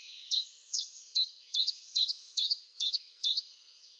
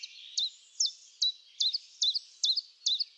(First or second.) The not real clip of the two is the first